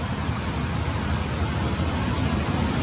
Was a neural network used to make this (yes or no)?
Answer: no